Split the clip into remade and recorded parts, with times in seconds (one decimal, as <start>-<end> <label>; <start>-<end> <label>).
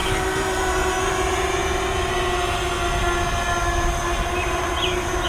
0.0-1.6 remade; 1.6-4.8 recorded; 4.8-5.3 remade